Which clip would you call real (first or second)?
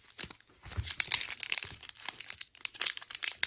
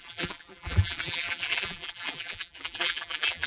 first